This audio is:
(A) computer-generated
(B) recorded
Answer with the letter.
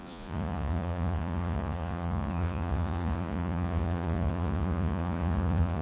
A